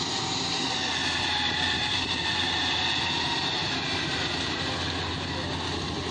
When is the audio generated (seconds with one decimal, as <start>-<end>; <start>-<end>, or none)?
1.0-4.7